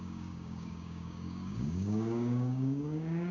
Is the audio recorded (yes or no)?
no